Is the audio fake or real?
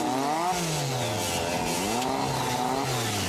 real